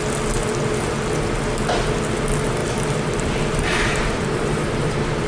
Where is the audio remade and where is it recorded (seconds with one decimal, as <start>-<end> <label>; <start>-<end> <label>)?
0.0-2.6 recorded; 2.6-5.3 remade